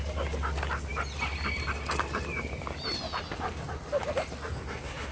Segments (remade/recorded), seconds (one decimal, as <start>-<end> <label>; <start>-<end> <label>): 0.0-5.1 recorded